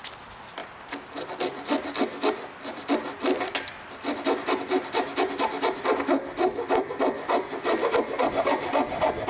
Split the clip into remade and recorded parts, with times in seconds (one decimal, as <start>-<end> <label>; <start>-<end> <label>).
0.0-9.3 recorded